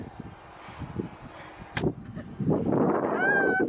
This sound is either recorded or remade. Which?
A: recorded